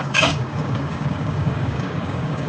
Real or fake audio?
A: fake